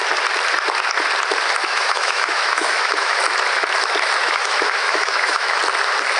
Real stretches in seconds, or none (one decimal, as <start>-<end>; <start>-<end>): 0.0-1.6; 3.2-4.2; 5.6-6.2